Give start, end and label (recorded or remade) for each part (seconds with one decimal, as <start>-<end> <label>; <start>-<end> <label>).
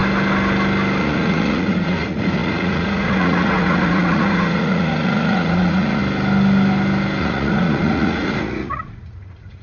0.0-1.0 recorded; 1.0-6.0 remade; 6.0-7.2 recorded; 7.2-9.6 remade